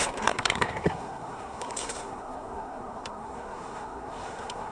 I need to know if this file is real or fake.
fake